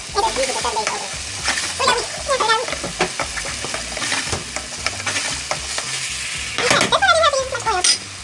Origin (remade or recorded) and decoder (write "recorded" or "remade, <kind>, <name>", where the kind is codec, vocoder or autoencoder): recorded